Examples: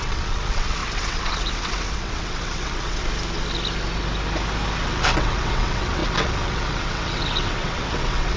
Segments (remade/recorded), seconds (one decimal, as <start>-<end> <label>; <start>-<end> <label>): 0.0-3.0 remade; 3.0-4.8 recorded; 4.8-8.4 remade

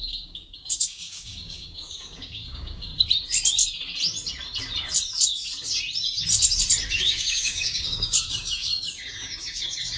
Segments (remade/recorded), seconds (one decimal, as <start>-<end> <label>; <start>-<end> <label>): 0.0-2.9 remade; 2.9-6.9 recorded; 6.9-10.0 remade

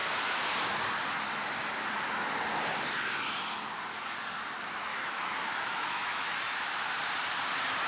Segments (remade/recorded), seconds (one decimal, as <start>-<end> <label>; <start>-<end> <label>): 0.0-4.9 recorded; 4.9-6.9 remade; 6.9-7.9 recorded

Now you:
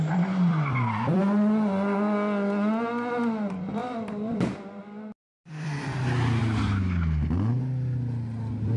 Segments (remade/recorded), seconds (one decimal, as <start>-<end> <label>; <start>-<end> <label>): 0.0-0.5 recorded; 0.5-1.2 remade; 1.2-3.8 recorded; 3.8-4.8 remade; 4.8-5.4 recorded; 5.4-6.0 remade; 6.0-8.8 recorded

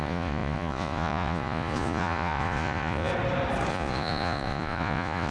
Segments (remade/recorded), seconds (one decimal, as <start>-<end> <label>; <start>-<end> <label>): 0.0-3.1 remade; 3.1-3.7 recorded; 3.7-5.3 remade